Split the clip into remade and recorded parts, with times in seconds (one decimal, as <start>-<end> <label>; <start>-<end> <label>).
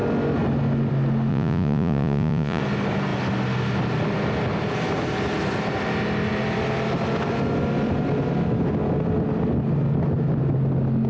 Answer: 0.0-1.3 recorded; 1.3-2.6 remade; 2.6-11.1 recorded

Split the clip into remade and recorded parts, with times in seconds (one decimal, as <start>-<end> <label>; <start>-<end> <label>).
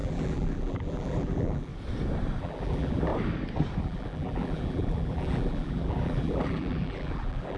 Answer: 0.0-1.7 remade; 1.7-2.4 recorded; 2.4-3.1 remade; 3.1-3.8 recorded; 3.8-7.6 remade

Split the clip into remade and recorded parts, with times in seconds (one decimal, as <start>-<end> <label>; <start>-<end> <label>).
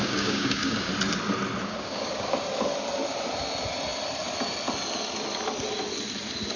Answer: 0.0-0.9 remade; 0.9-1.6 recorded; 1.6-2.3 remade; 2.3-6.6 recorded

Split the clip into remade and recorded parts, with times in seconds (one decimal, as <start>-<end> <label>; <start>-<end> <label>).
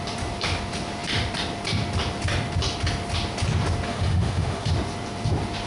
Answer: 0.0-3.9 recorded; 3.9-4.7 remade; 4.7-5.7 recorded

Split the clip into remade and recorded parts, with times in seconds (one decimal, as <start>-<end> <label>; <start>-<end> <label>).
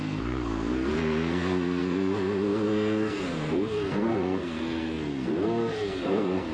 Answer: 0.0-6.5 remade